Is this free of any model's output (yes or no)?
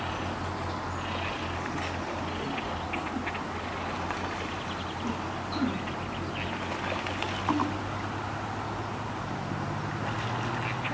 yes